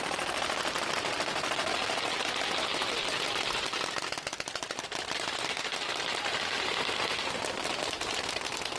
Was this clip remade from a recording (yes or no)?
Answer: no